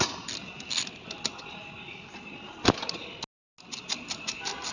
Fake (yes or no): no